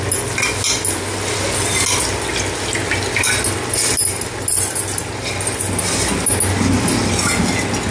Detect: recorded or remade recorded